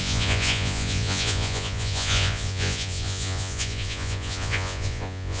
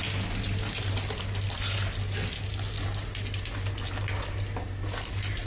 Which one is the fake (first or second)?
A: first